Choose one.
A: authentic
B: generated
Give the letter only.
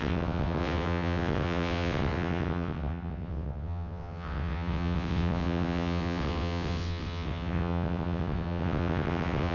B